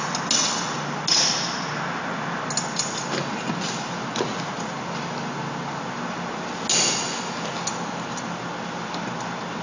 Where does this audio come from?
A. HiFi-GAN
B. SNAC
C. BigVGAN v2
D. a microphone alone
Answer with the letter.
D